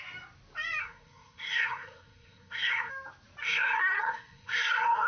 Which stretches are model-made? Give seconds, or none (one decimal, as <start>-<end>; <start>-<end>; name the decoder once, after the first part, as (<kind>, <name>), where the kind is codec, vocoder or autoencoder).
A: 0.8-2.9 (codec, SNAC); 3.4-5.1